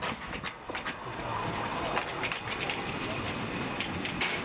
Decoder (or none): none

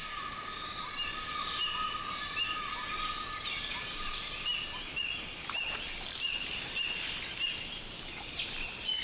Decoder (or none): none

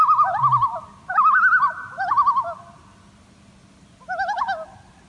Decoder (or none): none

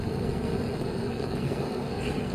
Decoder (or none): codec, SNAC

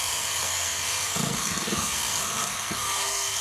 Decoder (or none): codec, SNAC